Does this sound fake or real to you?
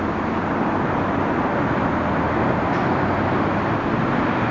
real